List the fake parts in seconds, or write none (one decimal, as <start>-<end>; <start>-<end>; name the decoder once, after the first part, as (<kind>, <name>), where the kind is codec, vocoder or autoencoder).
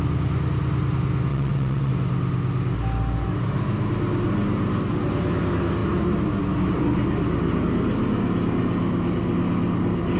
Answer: 1.3-1.9 (vocoder, WaveNeXt)